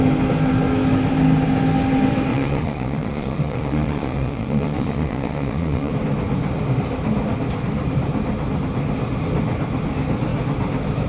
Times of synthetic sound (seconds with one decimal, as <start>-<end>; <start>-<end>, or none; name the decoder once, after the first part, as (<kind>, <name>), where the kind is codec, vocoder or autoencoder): 2.3-5.9 (vocoder, Vocos)